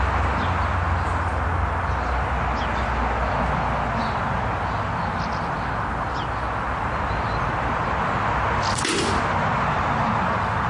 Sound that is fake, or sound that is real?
real